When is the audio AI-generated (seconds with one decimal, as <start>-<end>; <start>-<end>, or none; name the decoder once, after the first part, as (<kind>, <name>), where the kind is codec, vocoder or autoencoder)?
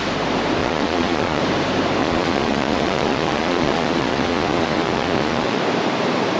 0.6-1.4 (vocoder, Vocos); 2.0-5.6